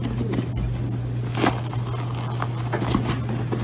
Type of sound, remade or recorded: recorded